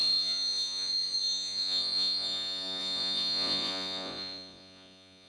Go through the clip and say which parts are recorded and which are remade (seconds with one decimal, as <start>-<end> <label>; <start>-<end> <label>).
0.0-5.3 remade